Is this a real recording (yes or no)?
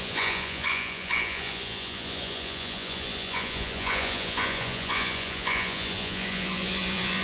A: no